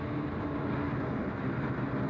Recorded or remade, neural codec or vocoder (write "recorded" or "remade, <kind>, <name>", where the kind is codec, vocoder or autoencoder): recorded